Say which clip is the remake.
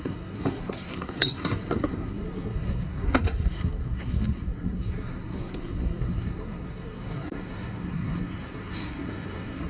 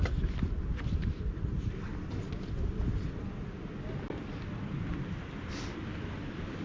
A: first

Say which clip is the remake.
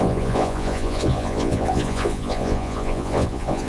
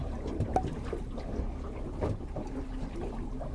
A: first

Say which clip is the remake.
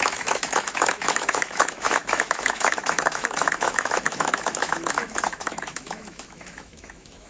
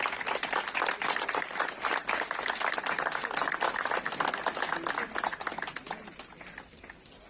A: first